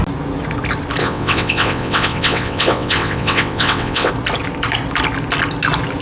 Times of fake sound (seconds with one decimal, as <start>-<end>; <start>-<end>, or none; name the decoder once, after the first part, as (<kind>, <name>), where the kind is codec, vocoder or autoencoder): 1.0-4.1 (vocoder, WaveNeXt)